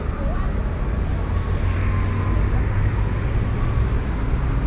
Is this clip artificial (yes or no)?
no